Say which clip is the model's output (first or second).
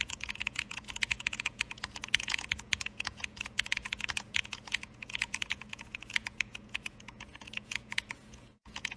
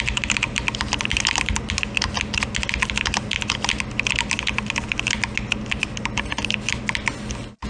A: first